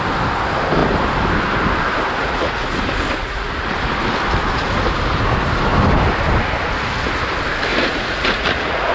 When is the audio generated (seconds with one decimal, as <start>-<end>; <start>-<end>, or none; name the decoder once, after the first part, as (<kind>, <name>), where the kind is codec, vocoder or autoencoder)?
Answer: 2.2-2.8 (vocoder, Vocos); 3.2-3.7; 7.7-8.9